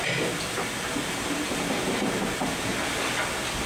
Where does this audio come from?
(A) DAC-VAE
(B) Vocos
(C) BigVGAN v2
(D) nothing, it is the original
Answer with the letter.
D